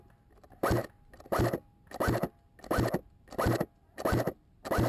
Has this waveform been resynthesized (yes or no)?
no